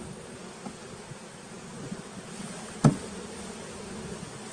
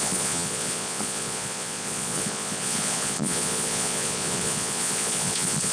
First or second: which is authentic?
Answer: first